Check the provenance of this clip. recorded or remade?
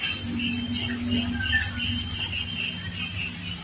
recorded